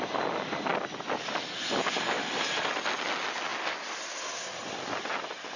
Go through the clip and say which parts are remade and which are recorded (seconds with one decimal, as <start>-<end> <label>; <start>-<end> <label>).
0.0-5.6 recorded